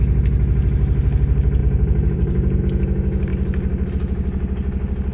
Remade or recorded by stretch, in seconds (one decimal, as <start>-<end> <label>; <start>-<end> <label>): 0.0-1.6 recorded; 1.6-2.6 remade; 2.6-5.1 recorded